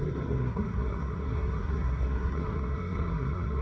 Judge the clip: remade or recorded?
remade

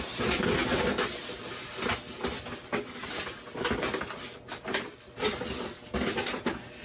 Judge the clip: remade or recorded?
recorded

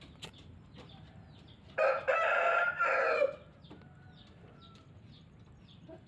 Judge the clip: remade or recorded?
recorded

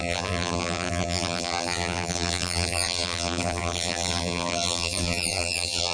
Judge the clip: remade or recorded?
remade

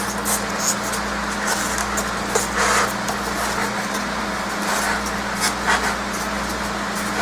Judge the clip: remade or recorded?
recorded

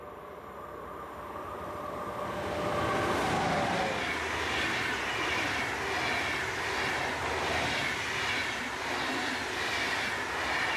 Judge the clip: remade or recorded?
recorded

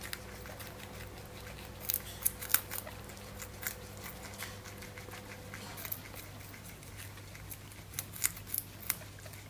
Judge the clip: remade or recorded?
recorded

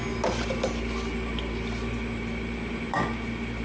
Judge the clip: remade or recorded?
recorded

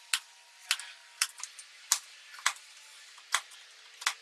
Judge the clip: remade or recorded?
recorded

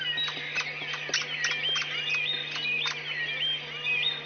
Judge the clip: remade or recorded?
recorded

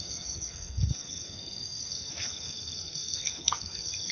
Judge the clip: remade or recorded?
remade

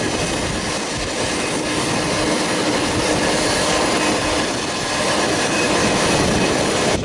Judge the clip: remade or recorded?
recorded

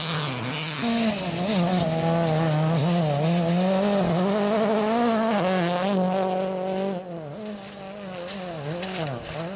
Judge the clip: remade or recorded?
recorded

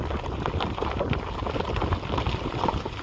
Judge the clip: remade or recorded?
recorded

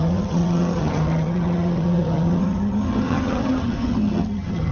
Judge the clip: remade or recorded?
remade